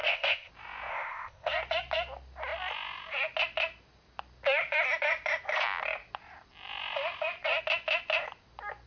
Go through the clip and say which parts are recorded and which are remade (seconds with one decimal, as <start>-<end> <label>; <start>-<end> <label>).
0.0-0.5 remade; 0.5-0.9 recorded; 0.9-1.5 remade; 1.5-8.9 recorded

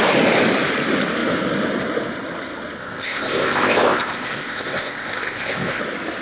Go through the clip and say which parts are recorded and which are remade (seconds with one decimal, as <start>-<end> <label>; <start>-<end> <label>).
0.0-2.8 recorded; 2.8-5.8 remade; 5.8-6.2 recorded

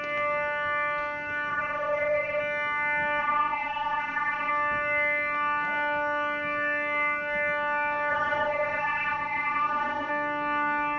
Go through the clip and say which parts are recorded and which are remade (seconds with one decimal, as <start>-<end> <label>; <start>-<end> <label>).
0.0-1.5 recorded; 1.5-2.4 remade; 2.4-3.2 recorded; 3.2-4.5 remade; 4.5-8.1 recorded; 8.1-10.1 remade; 10.1-11.0 recorded

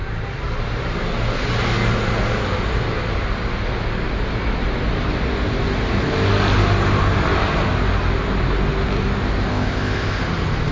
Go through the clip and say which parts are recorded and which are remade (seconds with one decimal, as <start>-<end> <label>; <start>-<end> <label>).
0.0-9.5 recorded; 9.5-10.2 remade; 10.2-10.7 recorded

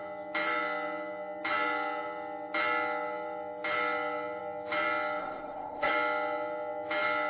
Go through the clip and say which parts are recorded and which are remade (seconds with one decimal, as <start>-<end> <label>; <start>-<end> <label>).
0.0-5.2 recorded; 5.2-5.9 remade; 5.9-7.3 recorded

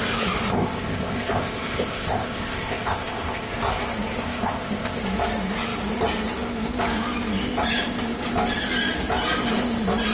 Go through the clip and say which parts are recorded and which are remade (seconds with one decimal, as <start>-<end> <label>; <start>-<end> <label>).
0.0-0.5 recorded; 0.5-3.5 remade; 3.5-4.2 recorded; 4.2-5.0 remade; 5.0-10.1 recorded

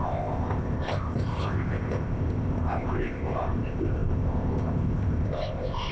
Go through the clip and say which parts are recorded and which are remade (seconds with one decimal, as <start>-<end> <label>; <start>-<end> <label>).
0.0-5.9 remade

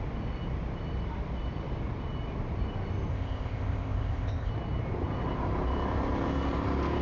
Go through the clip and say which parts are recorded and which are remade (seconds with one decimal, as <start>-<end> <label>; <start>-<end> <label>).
0.0-3.1 recorded; 3.1-4.5 remade; 4.5-7.0 recorded